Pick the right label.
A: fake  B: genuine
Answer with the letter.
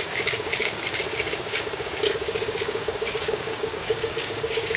A